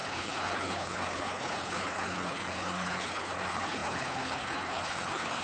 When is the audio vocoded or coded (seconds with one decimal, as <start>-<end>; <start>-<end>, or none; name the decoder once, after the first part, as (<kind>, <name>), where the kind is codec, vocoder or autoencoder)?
0.0-5.4 (codec, HILCodec)